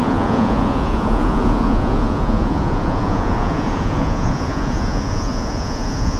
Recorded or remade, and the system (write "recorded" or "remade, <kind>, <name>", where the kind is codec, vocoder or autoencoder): remade, vocoder, Vocos